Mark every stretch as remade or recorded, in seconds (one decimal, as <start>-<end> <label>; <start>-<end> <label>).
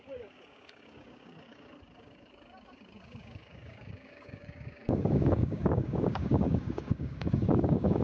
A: 0.0-8.0 remade